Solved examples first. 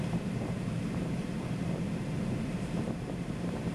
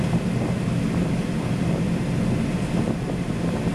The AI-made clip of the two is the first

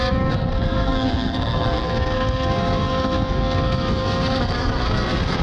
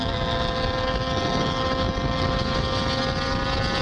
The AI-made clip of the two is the first